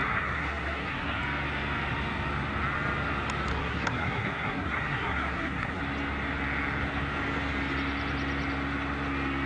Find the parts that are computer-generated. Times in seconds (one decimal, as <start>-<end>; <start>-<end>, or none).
0.0-1.2; 3.5-5.8